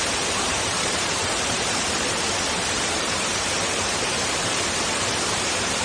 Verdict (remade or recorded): remade